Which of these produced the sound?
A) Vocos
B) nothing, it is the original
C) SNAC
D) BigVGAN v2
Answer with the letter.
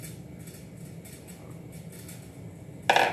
B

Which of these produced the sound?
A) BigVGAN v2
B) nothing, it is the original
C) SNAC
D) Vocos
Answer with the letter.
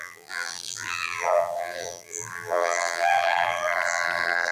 A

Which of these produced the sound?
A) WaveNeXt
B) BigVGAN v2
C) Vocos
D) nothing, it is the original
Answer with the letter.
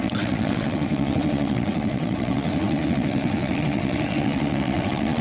A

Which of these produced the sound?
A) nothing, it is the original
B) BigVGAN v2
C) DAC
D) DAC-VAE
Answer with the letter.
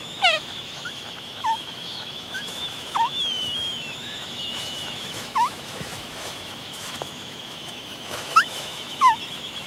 D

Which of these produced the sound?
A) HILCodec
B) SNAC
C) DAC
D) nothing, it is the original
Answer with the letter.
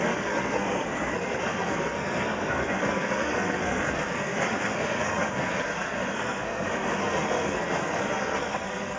B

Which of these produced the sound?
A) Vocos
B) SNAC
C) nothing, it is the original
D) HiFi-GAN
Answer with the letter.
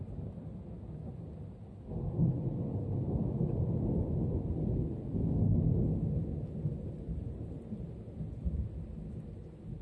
C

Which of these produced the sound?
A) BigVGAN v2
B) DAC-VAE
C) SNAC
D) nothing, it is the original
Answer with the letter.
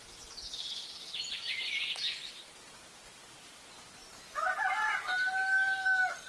D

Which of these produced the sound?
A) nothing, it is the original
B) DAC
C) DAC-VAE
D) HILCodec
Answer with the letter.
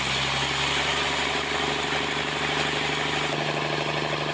A